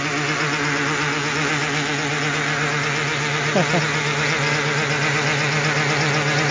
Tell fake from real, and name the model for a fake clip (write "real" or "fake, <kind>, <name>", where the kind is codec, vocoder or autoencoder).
real